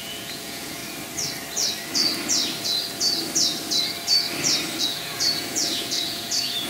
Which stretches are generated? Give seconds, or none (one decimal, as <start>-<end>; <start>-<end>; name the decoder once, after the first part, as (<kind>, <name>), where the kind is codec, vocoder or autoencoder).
0.0-0.8 (vocoder, Vocos); 4.8-6.7